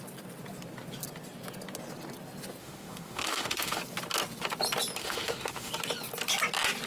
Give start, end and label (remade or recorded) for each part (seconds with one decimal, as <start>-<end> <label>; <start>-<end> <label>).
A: 0.0-2.6 recorded; 2.6-3.8 remade; 3.8-5.0 recorded; 5.0-5.7 remade; 5.7-6.9 recorded